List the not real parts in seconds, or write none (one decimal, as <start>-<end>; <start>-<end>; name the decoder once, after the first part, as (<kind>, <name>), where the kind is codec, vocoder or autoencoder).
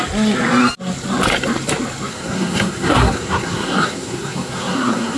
2.1-5.2 (codec, SNAC)